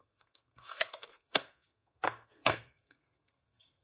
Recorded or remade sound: remade